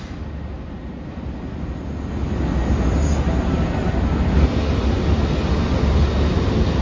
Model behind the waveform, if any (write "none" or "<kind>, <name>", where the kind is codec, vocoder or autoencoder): none